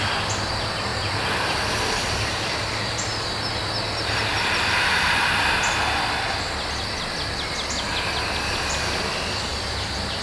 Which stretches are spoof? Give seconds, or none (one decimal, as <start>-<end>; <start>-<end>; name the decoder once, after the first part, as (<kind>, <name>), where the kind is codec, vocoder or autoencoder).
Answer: 0.9-2.7 (vocoder, BigVGAN v2); 9.5-10.2